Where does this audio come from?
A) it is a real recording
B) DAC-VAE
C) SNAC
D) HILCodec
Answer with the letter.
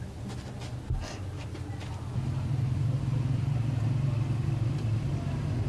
A